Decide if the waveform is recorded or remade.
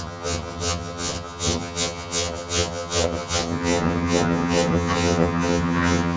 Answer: remade